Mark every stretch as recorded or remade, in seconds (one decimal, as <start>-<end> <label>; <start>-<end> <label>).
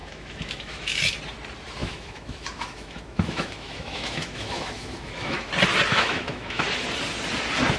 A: 0.0-1.0 remade; 1.0-1.8 recorded; 1.8-5.5 remade; 5.5-5.9 recorded; 5.9-6.6 remade; 6.6-7.8 recorded